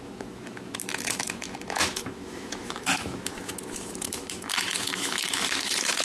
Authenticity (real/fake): fake